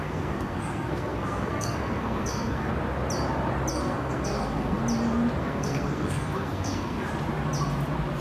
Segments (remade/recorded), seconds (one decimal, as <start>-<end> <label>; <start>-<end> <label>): 0.0-2.7 remade; 2.7-3.7 recorded; 3.7-4.8 remade; 4.8-5.4 recorded; 5.4-7.1 remade; 7.1-8.2 recorded